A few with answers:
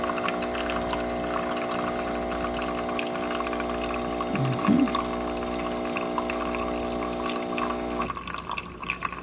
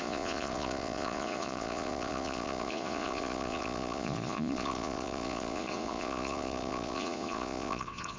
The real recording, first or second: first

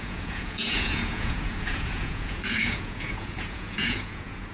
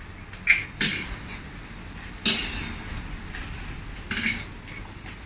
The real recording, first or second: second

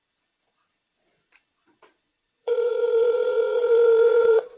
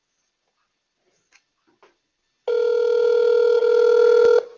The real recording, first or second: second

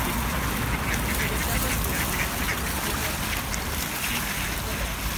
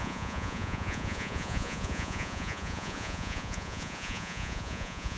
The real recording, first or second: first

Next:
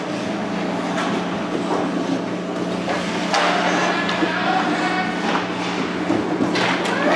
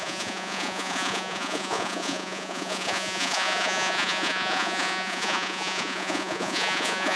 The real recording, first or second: first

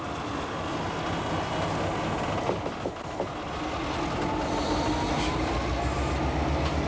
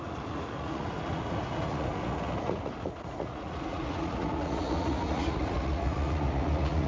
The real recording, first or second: first